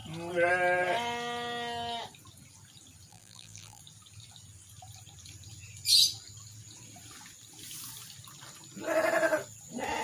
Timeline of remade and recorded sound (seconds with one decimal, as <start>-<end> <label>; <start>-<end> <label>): 0.0-3.1 recorded; 3.1-3.8 remade; 3.8-10.0 recorded